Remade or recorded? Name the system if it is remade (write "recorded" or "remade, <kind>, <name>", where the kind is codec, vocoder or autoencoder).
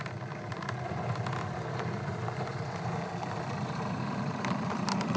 remade, vocoder, BigVGAN v2